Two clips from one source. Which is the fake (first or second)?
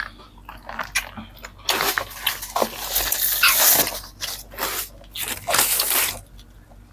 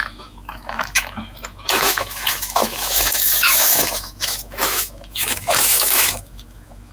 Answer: second